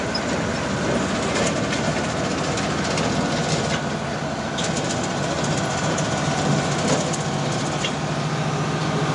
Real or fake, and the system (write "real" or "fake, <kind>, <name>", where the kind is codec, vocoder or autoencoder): real